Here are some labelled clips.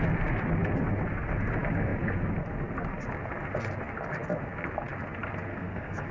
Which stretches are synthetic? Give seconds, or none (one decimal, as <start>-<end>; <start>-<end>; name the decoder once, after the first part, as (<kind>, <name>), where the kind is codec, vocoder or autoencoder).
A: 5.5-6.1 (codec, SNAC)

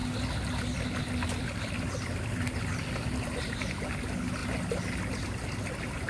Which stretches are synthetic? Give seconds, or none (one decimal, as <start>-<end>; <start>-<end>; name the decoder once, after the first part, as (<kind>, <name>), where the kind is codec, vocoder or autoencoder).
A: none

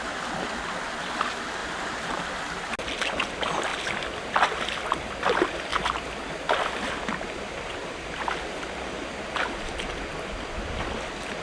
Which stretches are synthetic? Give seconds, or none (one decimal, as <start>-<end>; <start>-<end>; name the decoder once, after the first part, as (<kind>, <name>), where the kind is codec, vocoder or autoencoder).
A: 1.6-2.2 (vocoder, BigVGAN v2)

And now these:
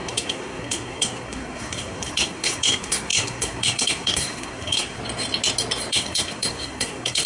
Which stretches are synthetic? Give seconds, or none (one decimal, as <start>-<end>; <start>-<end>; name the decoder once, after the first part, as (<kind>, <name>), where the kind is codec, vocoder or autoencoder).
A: 0.0-5.0 (codec, SNAC); 5.9-7.3

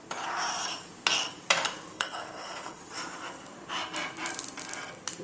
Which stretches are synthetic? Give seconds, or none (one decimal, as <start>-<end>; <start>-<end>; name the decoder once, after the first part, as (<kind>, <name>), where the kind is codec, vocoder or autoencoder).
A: 1.9-2.8 (codec, HILCodec)